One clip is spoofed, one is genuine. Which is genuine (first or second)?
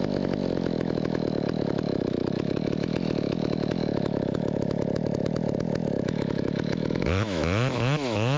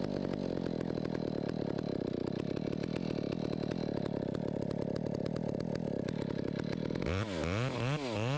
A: second